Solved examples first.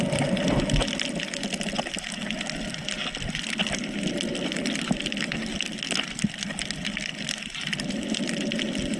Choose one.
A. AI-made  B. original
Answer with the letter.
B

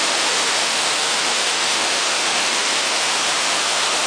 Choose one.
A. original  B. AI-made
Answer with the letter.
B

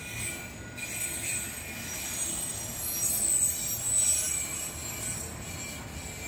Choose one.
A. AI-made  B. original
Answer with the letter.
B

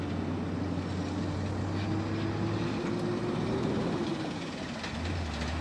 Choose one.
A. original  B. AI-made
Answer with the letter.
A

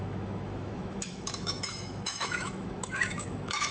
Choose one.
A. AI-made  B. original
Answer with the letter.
A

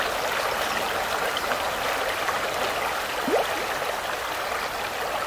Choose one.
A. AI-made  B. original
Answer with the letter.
B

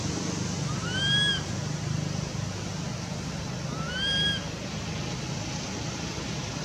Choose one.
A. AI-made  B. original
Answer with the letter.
B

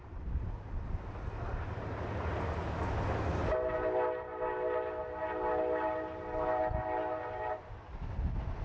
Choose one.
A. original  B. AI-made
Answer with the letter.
A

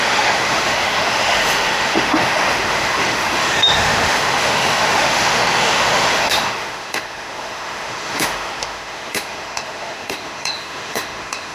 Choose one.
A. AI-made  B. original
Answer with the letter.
A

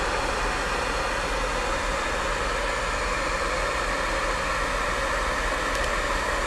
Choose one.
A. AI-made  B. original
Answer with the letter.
B